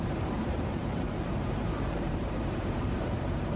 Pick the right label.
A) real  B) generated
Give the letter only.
B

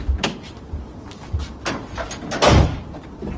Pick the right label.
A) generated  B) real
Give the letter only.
B